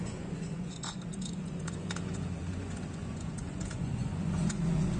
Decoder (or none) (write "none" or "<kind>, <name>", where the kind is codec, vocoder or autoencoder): vocoder, Vocos